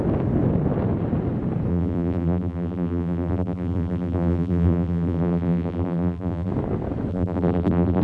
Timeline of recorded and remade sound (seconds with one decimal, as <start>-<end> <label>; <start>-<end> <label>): 0.0-1.7 recorded; 1.7-6.5 remade; 6.5-7.1 recorded; 7.1-8.0 remade